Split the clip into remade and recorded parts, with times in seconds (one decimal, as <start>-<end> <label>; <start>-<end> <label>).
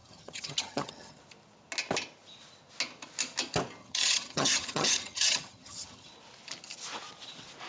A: 0.0-1.2 remade; 1.2-3.8 recorded; 3.8-6.1 remade; 6.1-7.7 recorded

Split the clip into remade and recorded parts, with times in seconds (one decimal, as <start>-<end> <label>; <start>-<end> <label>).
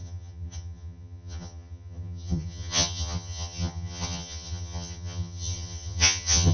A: 0.0-6.5 remade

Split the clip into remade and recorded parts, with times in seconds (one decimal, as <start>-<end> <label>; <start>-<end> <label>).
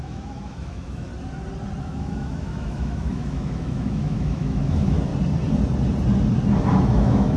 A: 0.0-1.1 remade; 1.1-1.8 recorded; 1.8-5.1 remade; 5.1-6.6 recorded; 6.6-7.4 remade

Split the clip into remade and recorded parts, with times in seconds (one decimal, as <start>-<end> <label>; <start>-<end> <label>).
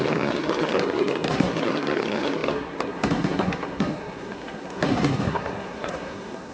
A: 0.0-6.5 remade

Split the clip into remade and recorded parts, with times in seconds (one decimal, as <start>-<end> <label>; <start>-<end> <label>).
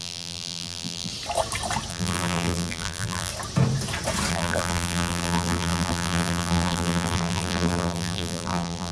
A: 0.0-1.1 remade; 1.1-1.9 recorded; 1.9-3.3 remade; 3.3-4.3 recorded; 4.3-8.9 remade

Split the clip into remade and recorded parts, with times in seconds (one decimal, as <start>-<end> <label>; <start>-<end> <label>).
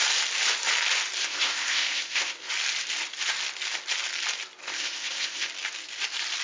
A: 0.0-1.2 recorded; 1.2-2.5 remade; 2.5-4.6 recorded; 4.6-5.5 remade; 5.5-6.4 recorded